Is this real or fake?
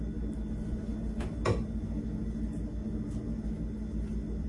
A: real